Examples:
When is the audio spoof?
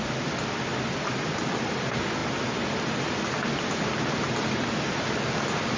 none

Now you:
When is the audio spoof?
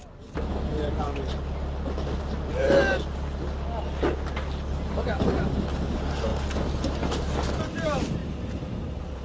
8.2-9.2 (vocoder, BigVGAN v2)